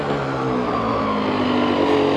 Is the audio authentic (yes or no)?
yes